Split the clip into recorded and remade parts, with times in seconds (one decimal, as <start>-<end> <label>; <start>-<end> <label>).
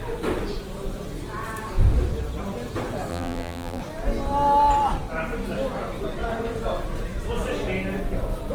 0.0-3.1 recorded; 3.1-3.8 remade; 3.8-8.5 recorded